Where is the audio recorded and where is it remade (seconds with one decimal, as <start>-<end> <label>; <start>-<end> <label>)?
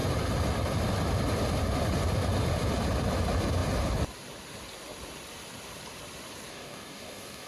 0.0-6.5 recorded; 6.5-7.5 remade